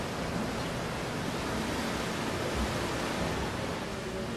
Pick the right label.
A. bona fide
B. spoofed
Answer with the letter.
A